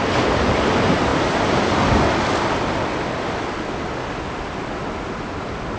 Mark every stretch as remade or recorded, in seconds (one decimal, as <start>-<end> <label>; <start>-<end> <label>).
0.0-5.8 recorded